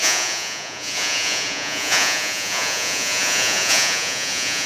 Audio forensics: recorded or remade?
remade